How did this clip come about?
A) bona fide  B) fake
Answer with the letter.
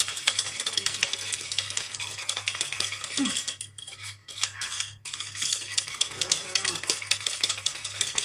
B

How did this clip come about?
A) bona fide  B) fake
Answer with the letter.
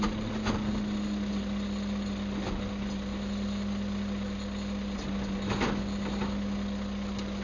A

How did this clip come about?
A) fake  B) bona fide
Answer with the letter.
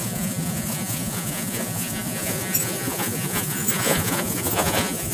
A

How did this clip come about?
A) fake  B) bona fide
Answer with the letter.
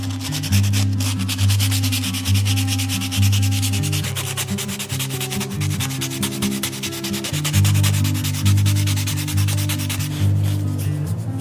B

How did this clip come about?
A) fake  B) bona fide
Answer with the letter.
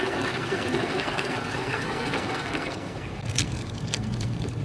A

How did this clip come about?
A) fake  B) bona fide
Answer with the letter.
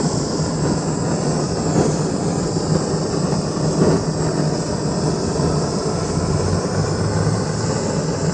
B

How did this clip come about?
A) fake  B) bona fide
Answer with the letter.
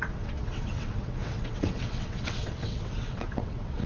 A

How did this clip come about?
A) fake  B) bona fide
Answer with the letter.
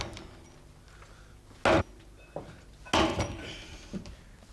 B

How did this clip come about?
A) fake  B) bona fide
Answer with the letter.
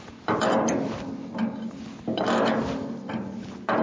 B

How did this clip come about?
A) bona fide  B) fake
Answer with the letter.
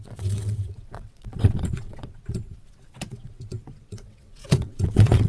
B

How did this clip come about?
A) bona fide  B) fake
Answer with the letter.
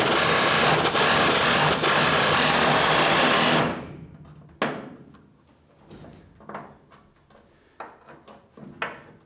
A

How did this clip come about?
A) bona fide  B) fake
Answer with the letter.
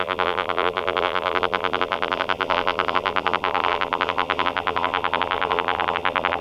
B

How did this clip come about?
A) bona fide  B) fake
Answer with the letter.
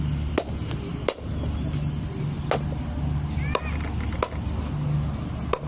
A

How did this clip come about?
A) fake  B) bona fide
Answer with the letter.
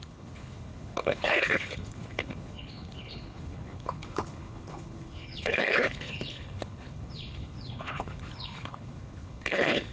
A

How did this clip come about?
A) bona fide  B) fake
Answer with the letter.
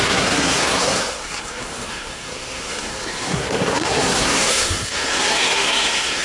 B